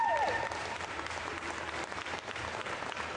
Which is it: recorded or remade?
remade